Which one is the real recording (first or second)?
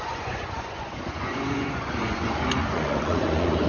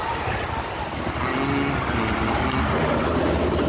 second